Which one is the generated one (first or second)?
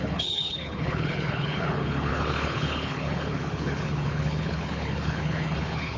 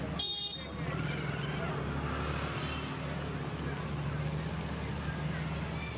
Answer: first